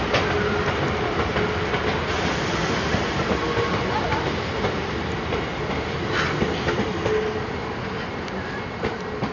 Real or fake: real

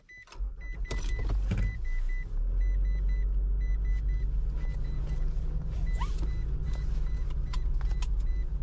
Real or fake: real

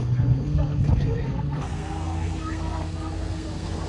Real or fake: fake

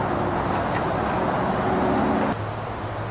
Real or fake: real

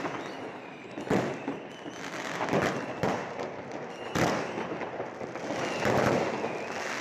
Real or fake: real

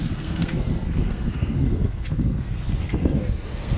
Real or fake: fake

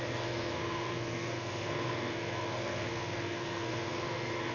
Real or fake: fake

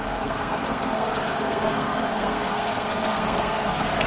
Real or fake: fake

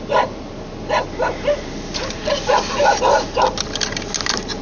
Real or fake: real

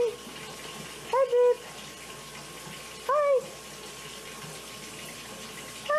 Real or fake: real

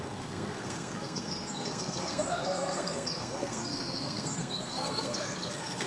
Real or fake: fake